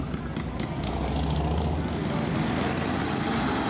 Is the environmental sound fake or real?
real